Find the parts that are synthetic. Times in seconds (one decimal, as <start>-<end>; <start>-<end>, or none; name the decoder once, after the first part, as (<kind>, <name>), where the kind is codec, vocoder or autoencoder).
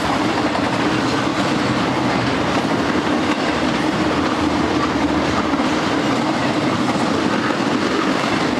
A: 0.0-6.4 (vocoder, BigVGAN v2); 7.0-8.6